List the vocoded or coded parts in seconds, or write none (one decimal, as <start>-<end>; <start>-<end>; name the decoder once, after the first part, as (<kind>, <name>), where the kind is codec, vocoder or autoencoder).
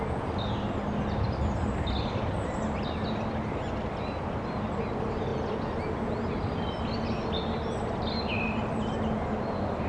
none